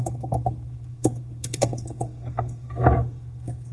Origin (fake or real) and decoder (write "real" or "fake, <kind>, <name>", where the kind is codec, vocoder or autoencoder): fake, codec, SNAC